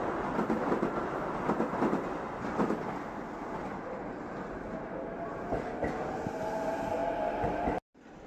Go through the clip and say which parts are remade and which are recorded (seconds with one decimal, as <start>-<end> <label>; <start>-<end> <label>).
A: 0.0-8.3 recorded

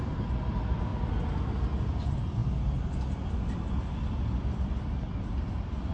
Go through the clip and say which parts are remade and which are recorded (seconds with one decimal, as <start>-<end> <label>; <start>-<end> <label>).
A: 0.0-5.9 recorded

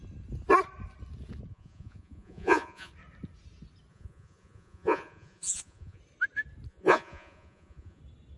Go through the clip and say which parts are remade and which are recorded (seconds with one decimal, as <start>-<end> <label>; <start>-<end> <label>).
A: 0.0-1.5 recorded; 1.5-2.9 remade; 2.9-3.9 recorded; 3.9-6.0 remade; 6.0-6.7 recorded; 6.7-8.0 remade; 8.0-8.4 recorded

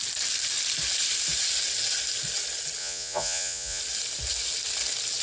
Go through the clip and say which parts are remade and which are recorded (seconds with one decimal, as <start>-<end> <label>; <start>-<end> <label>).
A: 0.0-2.8 recorded; 2.8-3.8 remade; 3.8-5.2 recorded

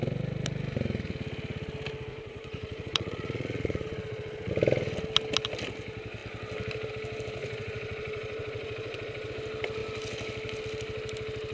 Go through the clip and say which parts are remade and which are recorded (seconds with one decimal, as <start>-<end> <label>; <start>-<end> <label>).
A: 0.0-2.1 recorded; 2.1-4.5 remade; 4.5-7.4 recorded; 7.4-9.3 remade; 9.3-11.5 recorded

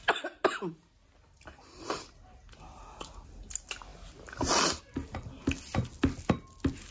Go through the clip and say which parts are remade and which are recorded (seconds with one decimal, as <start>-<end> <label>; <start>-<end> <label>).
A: 0.0-6.9 recorded